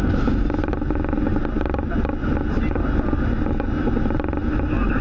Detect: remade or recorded recorded